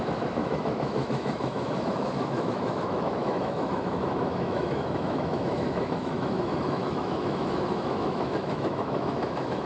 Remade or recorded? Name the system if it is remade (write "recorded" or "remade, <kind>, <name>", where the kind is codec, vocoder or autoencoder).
remade, autoencoder, DAC-VAE